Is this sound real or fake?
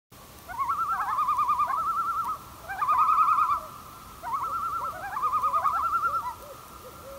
real